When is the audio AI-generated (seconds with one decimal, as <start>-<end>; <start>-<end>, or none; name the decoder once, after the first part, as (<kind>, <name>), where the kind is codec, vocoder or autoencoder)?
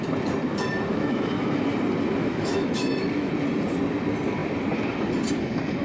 0.9-1.6 (autoencoder, DAC-VAE); 2.2-3.3